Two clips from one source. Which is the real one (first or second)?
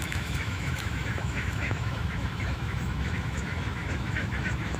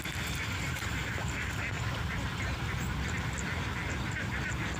second